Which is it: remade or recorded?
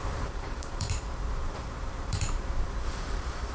remade